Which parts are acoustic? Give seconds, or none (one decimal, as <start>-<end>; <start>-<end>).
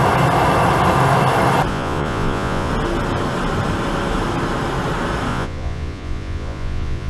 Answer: 0.0-1.7; 2.7-5.3